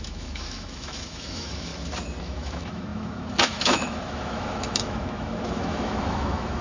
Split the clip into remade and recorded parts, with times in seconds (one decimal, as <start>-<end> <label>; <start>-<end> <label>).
0.0-1.7 remade; 1.7-2.2 recorded; 2.2-6.6 remade